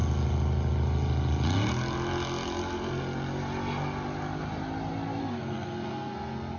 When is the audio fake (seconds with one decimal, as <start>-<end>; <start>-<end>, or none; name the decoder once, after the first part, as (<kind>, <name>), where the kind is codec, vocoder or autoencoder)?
5.2-6.6 (codec, SNAC)